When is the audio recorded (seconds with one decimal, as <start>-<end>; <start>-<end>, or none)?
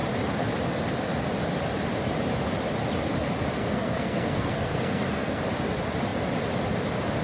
0.0-3.6; 5.4-7.2